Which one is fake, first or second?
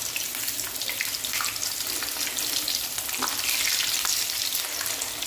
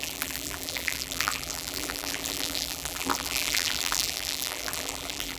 second